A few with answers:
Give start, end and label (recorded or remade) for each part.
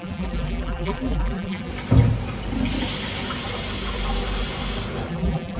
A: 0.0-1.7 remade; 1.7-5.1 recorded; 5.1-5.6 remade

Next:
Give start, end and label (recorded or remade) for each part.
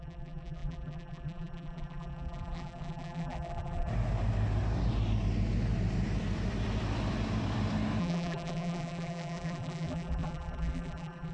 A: 0.0-3.9 remade; 3.9-8.0 recorded; 8.0-11.3 remade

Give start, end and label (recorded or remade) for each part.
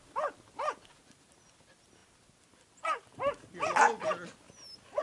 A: 0.0-5.0 recorded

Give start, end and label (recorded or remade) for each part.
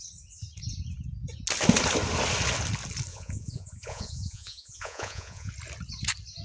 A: 0.0-3.1 recorded; 3.1-5.5 remade; 5.5-6.4 recorded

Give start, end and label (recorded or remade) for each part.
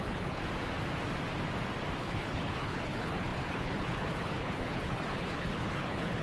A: 0.0-0.4 remade; 0.4-2.0 recorded; 2.0-6.2 remade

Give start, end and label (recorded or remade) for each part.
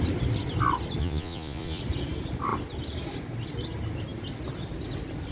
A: 0.0-1.0 recorded; 1.0-1.8 remade; 1.8-5.3 recorded